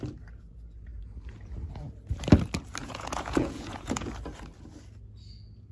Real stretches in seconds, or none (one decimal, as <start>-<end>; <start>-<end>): 0.0-2.8; 4.1-5.7